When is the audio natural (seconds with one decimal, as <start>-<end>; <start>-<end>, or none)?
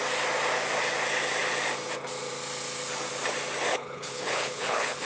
0.0-3.7